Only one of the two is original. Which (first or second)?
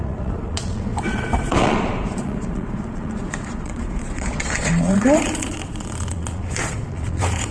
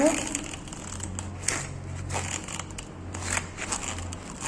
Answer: second